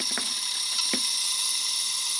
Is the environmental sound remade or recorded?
recorded